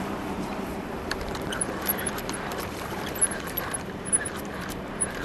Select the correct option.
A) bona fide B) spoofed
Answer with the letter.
B